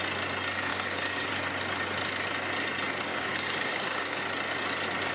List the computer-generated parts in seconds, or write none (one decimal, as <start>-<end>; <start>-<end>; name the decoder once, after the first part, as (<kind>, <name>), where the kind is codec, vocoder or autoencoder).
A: 0.7-1.3 (codec, DAC); 3.1-4.2